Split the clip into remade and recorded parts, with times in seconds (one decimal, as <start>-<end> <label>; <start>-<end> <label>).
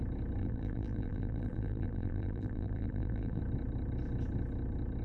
0.0-0.4 recorded; 0.4-3.4 remade; 3.4-5.0 recorded